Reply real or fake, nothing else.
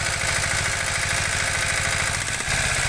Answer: real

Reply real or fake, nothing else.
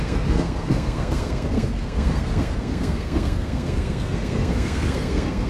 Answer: fake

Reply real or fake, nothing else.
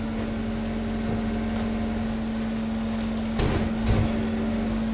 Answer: real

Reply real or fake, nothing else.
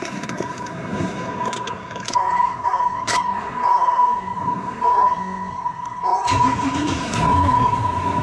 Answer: fake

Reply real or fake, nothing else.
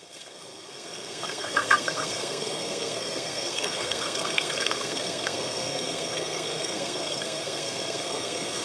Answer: fake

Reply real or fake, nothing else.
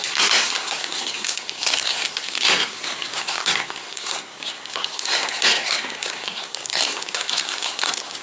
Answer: fake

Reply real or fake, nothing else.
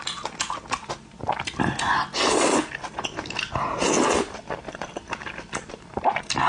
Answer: real